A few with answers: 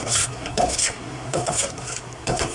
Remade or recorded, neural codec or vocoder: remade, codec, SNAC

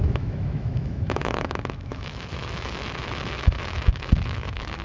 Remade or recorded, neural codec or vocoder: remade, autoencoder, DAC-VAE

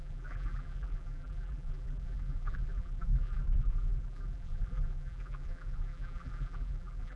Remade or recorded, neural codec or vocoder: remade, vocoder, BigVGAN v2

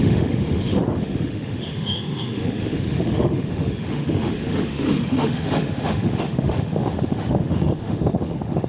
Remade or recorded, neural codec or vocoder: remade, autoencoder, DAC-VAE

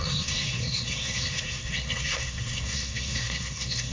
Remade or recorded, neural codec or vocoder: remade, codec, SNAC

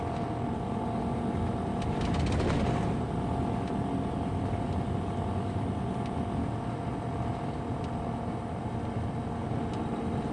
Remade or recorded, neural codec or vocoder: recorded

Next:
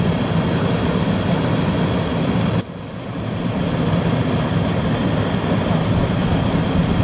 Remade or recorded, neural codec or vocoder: recorded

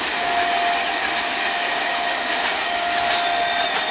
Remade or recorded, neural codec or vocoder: recorded